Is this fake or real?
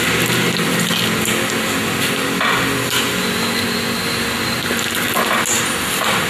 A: real